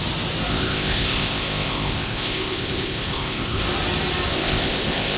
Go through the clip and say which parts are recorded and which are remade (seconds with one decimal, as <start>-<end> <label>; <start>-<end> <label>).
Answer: 0.0-0.5 recorded; 0.5-3.6 remade; 3.6-4.3 recorded; 4.3-5.2 remade